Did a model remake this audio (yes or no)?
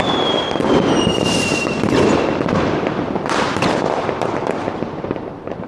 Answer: yes